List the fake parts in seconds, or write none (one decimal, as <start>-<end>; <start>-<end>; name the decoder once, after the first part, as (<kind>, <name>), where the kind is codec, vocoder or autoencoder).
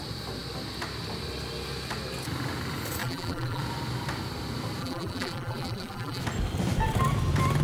3.0-3.6 (vocoder, BigVGAN v2); 4.8-6.2